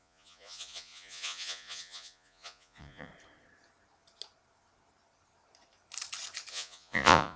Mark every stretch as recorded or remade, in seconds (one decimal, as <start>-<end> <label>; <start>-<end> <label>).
0.0-3.1 remade; 3.1-6.5 recorded; 6.5-7.4 remade